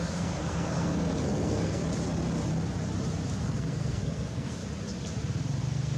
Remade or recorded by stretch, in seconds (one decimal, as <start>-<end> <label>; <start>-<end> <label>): 0.0-1.8 remade; 1.8-3.4 recorded; 3.4-4.6 remade; 4.6-5.6 recorded; 5.6-6.0 remade